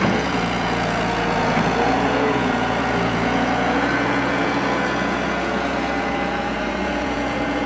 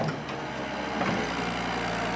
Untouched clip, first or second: second